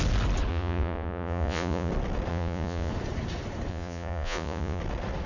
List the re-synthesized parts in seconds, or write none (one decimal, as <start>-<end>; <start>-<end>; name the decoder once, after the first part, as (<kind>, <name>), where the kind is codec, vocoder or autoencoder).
0.5-1.9 (vocoder, Vocos); 2.3-2.9; 3.7-4.8